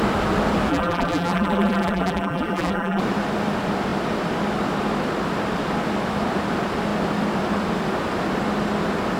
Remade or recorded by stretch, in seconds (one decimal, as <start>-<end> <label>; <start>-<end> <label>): 0.0-0.7 recorded; 0.7-3.0 remade; 3.0-9.2 recorded